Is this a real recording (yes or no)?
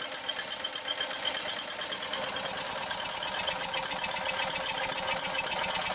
yes